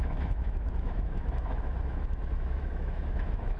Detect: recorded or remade remade